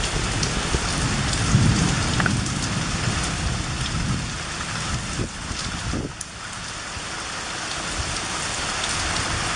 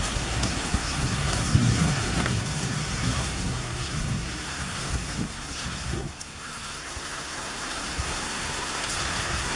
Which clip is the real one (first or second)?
first